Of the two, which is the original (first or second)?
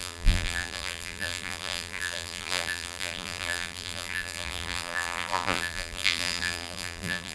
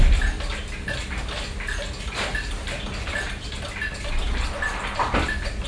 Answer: second